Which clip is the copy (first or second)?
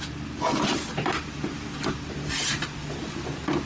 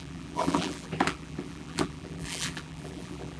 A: second